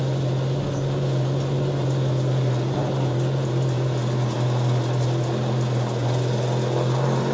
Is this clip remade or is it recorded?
recorded